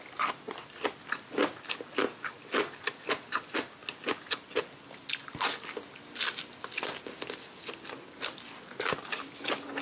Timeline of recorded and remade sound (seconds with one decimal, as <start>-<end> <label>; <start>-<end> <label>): 0.0-9.8 recorded